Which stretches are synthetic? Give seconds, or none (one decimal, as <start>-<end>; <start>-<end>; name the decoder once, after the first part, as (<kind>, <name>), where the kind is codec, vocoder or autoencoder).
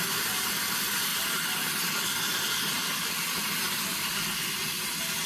none